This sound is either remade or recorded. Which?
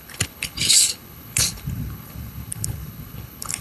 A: remade